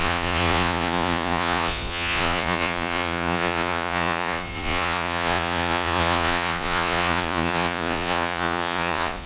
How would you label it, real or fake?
fake